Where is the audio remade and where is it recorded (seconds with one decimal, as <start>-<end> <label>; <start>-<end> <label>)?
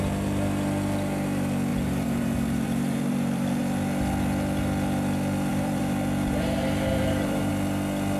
0.0-1.7 recorded; 1.7-3.6 remade; 3.6-5.5 recorded; 5.5-7.5 remade; 7.5-8.2 recorded